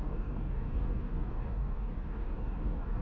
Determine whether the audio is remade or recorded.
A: remade